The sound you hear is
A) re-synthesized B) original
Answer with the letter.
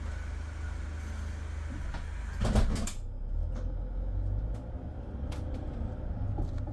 B